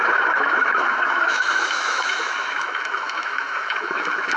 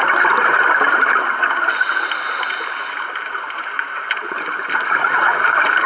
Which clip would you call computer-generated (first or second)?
first